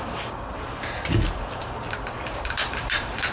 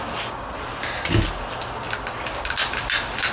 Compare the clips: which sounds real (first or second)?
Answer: second